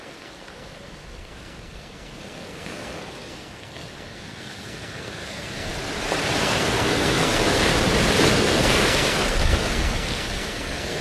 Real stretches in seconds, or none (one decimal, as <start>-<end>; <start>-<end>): 5.7-6.4; 7.7-8.3